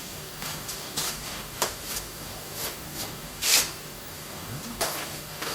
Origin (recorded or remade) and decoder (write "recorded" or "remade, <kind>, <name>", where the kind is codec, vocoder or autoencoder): remade, codec, DAC